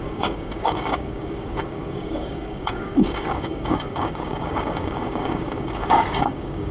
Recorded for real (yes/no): no